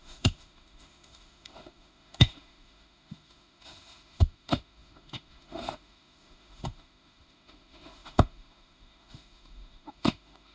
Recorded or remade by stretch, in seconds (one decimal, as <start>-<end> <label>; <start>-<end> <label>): 0.0-10.5 remade